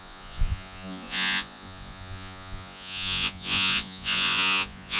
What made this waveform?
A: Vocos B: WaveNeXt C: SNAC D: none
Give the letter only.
A